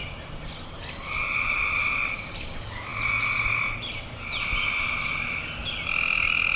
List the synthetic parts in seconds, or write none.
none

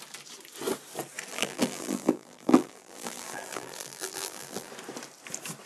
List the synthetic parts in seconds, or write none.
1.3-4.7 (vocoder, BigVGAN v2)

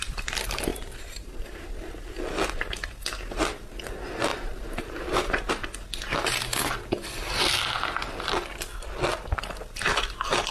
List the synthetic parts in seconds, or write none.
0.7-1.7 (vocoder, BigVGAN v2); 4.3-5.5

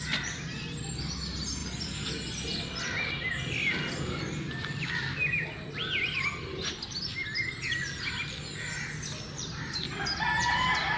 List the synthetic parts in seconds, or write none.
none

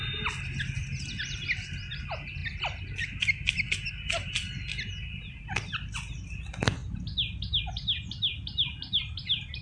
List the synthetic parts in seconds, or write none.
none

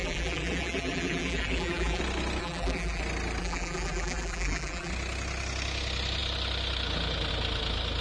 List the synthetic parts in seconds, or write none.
0.0-2.0 (vocoder, BigVGAN v2); 2.4-3.0; 3.4-4.9

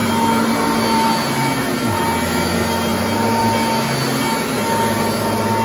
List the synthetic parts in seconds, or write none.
none